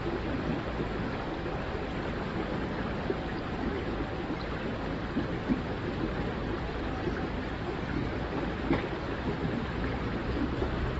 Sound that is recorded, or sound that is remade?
recorded